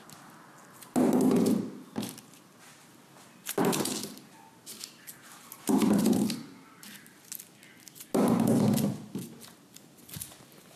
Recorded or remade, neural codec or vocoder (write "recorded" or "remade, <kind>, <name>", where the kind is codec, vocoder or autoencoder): recorded